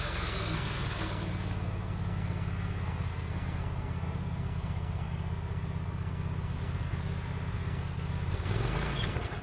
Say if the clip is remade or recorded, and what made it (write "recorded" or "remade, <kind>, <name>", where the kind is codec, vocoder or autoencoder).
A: remade, codec, SNAC